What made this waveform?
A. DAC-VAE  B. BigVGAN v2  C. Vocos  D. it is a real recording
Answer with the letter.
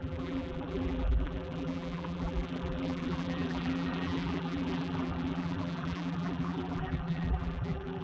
B